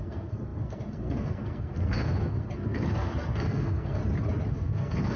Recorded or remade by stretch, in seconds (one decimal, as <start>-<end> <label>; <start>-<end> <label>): 0.0-4.0 remade; 4.0-4.5 recorded; 4.5-5.2 remade